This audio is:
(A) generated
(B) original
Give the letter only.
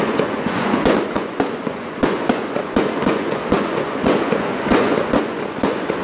A